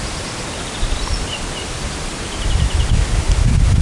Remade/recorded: remade